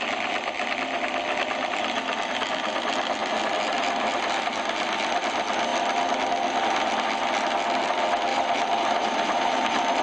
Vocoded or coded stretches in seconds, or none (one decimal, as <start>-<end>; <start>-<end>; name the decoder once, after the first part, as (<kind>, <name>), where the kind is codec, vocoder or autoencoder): 8.3-10.0 (vocoder, BigVGAN v2)